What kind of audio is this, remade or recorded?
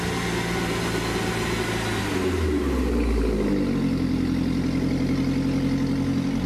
recorded